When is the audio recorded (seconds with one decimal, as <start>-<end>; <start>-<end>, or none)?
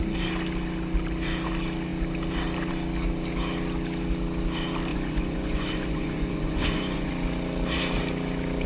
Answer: 0.0-4.9; 7.1-8.7